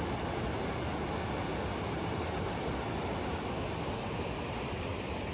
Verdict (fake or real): real